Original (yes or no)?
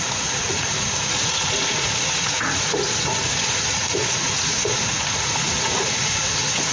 no